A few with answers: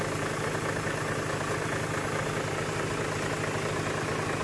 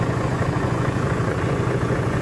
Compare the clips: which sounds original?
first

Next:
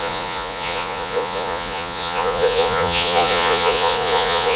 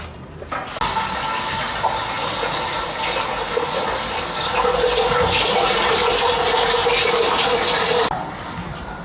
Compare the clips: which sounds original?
second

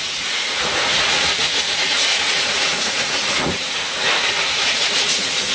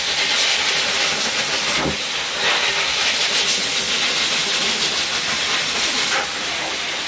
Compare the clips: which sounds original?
second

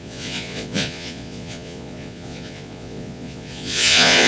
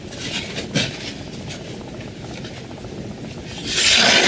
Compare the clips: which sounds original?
second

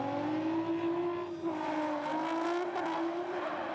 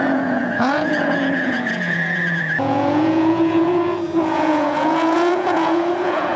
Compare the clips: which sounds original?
first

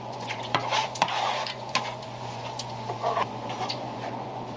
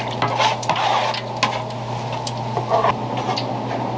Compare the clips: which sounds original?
second